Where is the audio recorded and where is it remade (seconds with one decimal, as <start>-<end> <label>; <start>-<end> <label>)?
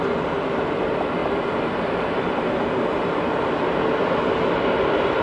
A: 0.0-5.2 remade